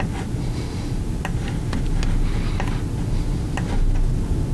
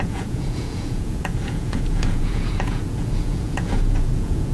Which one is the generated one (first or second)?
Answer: second